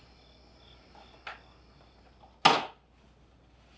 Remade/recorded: recorded